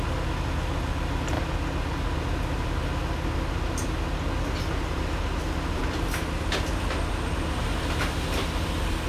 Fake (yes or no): no